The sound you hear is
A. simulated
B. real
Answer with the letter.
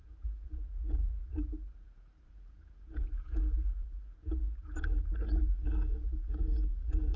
A